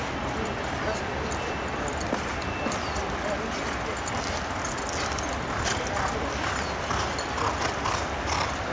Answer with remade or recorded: recorded